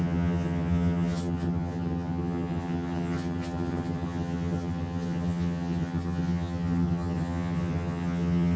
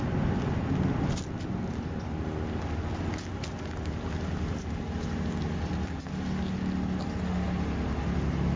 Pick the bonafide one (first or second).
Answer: second